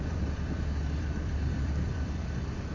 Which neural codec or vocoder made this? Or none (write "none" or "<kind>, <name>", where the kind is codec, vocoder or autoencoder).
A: vocoder, BigVGAN v2